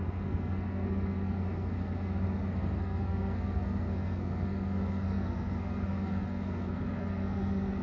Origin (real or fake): fake